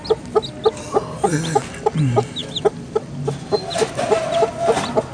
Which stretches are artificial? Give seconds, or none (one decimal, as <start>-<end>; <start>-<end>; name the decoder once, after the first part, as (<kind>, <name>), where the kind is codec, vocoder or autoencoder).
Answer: 2.4-3.7 (vocoder, BigVGAN v2)